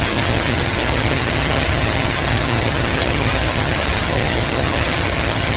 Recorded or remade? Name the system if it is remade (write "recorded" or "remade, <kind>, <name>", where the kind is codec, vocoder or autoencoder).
remade, vocoder, HiFi-GAN